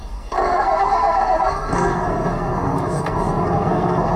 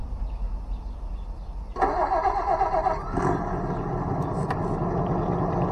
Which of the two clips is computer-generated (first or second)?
first